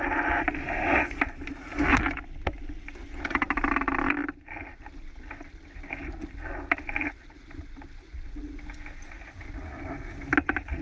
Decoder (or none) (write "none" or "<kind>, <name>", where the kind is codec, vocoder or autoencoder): none